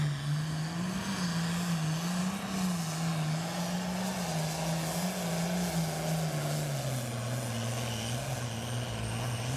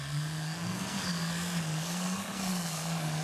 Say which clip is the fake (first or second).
second